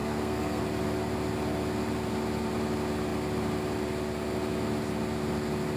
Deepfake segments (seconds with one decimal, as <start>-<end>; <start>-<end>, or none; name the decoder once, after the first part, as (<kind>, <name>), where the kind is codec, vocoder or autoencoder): 0.0-0.6 (codec, SNAC)